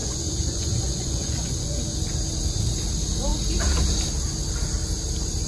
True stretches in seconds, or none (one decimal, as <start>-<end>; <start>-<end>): 1.8-5.5